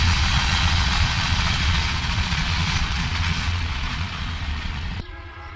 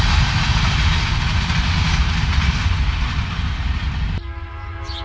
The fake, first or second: first